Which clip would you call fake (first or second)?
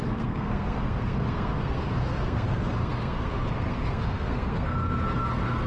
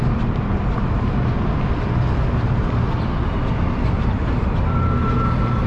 first